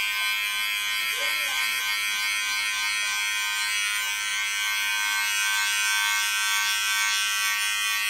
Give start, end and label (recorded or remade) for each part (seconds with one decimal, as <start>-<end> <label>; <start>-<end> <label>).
0.0-1.0 recorded; 1.0-1.8 remade; 1.8-8.1 recorded

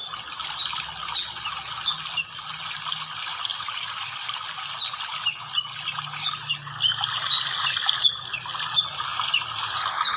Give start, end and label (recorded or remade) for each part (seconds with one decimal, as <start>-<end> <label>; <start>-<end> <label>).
0.0-3.5 recorded; 3.5-4.3 remade; 4.3-10.2 recorded

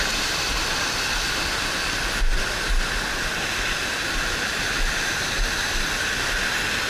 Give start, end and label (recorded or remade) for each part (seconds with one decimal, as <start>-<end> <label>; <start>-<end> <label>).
0.0-6.9 recorded

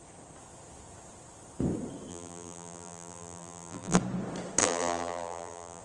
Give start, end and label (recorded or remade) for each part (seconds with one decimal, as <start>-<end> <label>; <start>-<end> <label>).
0.0-2.1 recorded; 2.1-4.0 remade; 4.0-4.6 recorded; 4.6-5.8 remade

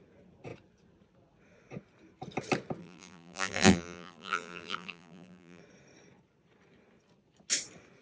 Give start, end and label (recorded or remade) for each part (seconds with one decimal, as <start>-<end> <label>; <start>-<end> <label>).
0.0-2.8 recorded; 2.8-5.6 remade; 5.6-8.0 recorded